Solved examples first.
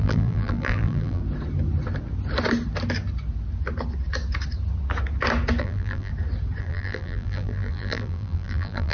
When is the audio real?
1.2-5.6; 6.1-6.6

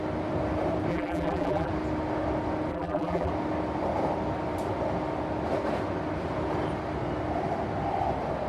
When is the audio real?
0.0-0.9; 1.7-2.7; 3.3-8.5

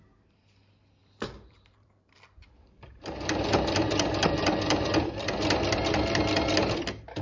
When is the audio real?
0.0-1.0; 5.3-7.2

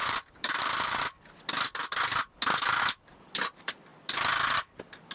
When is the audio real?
2.1-2.8; 3.9-5.1

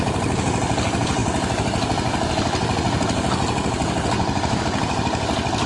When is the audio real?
0.0-5.7

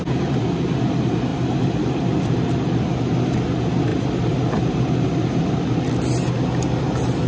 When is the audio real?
0.0-1.3; 2.8-3.9; 5.5-7.3